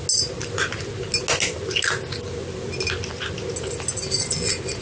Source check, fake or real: real